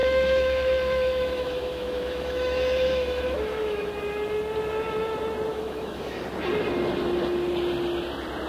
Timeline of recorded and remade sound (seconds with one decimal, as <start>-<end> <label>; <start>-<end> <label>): 0.0-3.9 remade; 3.9-5.5 recorded; 5.5-6.2 remade; 6.2-8.5 recorded

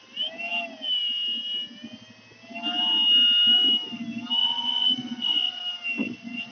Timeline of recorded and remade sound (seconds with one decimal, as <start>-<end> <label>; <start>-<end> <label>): 0.0-4.4 recorded; 4.4-5.6 remade; 5.6-6.0 recorded; 6.0-6.5 remade